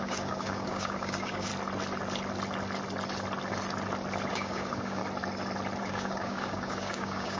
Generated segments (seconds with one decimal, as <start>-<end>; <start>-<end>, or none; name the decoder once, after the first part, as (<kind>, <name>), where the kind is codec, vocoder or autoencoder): 0.0-1.5 (codec, DAC); 4.3-5.0; 5.8-7.4